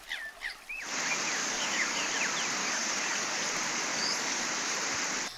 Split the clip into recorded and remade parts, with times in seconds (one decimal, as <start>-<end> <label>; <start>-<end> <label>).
0.0-1.4 recorded; 1.4-2.1 remade; 2.1-2.6 recorded; 2.6-3.4 remade; 3.4-3.9 recorded; 3.9-4.4 remade; 4.4-5.4 recorded